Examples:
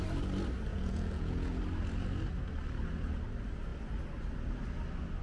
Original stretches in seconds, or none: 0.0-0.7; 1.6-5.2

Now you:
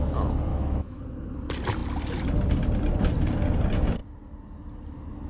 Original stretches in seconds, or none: 0.0-0.5; 1.0-5.3

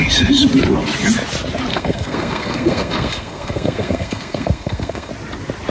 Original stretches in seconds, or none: 0.0-1.7; 5.1-5.7